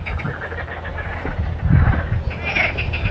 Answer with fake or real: real